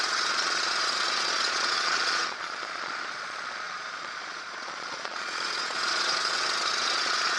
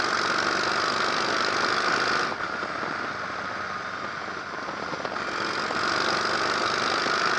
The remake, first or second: first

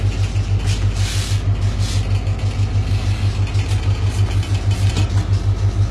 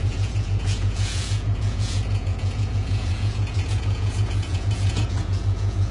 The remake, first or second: second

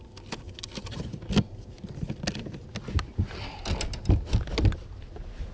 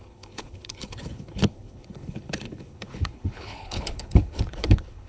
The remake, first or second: second